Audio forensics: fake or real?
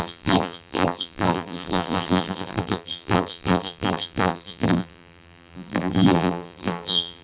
fake